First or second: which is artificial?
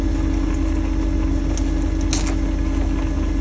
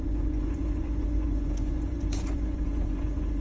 second